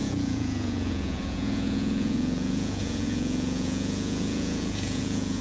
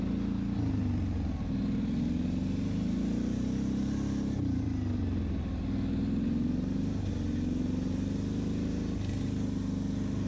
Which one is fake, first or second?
first